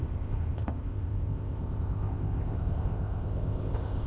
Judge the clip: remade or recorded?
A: remade